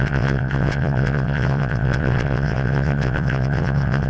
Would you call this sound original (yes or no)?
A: no